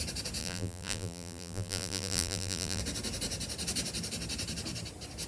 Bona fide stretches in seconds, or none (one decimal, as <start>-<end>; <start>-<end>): 0.0-0.4; 2.8-5.3

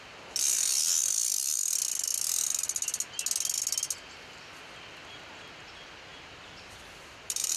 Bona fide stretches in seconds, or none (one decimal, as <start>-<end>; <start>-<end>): 0.0-6.1

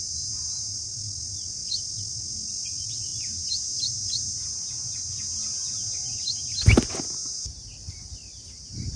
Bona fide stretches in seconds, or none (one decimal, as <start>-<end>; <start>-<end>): 0.0-9.0

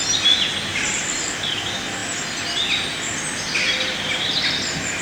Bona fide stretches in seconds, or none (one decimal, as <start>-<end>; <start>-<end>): 0.0-0.7; 1.3-5.0

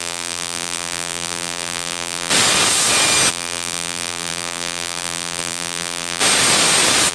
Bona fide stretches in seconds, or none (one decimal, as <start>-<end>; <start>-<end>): 2.3-3.3; 6.2-7.1

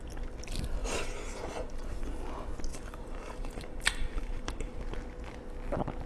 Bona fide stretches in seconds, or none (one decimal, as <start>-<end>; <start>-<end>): 0.0-0.8; 1.8-2.7; 4.8-6.1